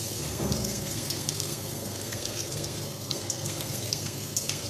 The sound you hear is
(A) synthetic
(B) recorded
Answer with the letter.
A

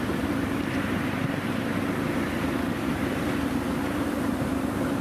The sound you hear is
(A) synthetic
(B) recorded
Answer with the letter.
B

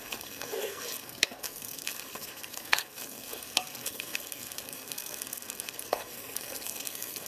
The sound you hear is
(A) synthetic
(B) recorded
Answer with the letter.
A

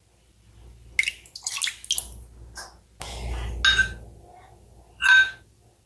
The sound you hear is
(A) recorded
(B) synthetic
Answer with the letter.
A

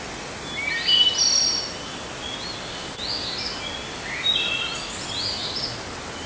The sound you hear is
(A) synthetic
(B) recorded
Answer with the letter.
B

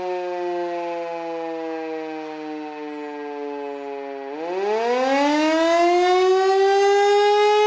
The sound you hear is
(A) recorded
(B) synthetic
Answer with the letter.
A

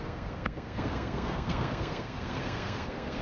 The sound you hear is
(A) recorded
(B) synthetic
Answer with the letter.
B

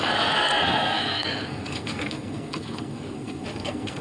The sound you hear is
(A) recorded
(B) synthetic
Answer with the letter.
B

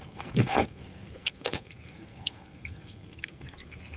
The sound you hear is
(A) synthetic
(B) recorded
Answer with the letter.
A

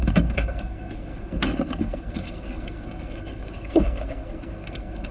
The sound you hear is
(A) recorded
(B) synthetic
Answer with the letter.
B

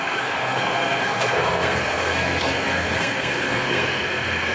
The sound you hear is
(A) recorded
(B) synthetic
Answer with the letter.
B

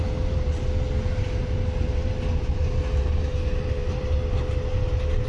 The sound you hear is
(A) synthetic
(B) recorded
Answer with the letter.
B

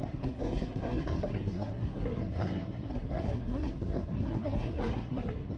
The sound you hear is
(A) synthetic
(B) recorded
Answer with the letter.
A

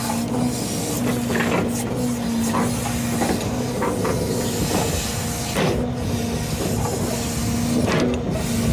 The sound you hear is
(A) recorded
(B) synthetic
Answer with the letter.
A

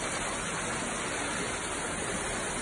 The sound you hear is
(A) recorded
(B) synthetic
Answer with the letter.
A